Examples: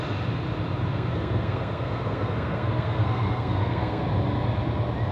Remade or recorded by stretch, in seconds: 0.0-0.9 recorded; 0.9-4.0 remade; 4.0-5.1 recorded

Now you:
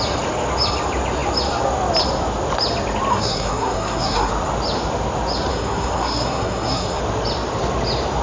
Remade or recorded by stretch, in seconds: 0.0-3.1 recorded; 3.1-4.3 remade; 4.3-5.5 recorded; 5.5-7.0 remade; 7.0-8.2 recorded

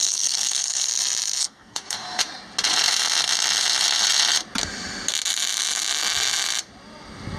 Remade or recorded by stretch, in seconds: 0.0-0.9 remade; 0.9-1.4 recorded; 1.4-2.2 remade; 2.2-7.4 recorded

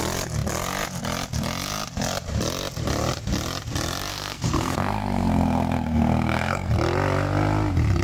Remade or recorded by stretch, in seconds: 0.0-4.1 recorded; 4.1-6.7 remade; 6.7-8.0 recorded